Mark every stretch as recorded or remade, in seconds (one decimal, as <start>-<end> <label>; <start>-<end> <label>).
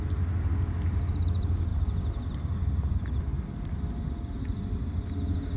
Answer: 0.0-5.6 recorded